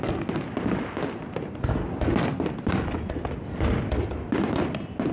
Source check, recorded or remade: recorded